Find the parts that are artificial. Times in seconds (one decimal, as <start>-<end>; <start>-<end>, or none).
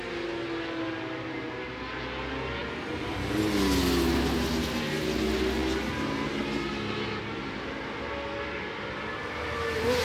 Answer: 2.6-3.3